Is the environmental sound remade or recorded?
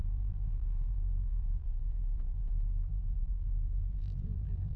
remade